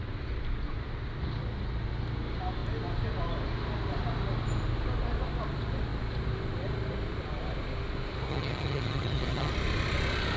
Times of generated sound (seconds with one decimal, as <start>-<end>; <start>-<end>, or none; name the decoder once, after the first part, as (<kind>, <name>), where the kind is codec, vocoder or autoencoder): 8.3-9.5 (vocoder, HiFi-GAN)